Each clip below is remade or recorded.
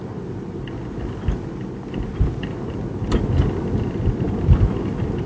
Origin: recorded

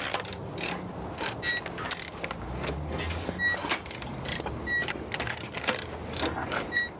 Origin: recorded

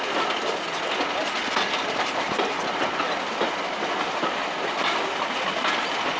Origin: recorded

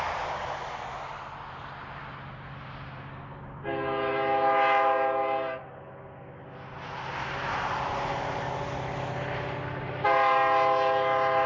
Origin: recorded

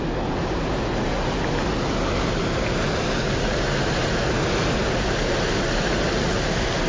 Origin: recorded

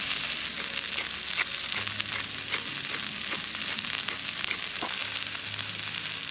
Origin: recorded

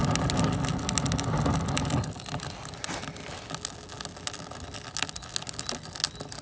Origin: recorded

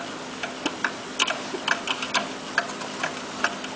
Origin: recorded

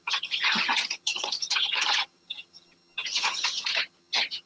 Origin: remade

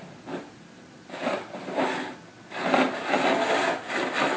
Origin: recorded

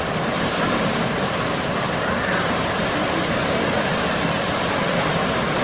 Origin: recorded